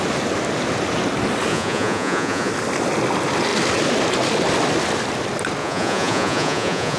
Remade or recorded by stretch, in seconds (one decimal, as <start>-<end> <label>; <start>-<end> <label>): 0.0-1.5 recorded; 1.5-2.5 remade; 2.5-5.6 recorded; 5.6-7.0 remade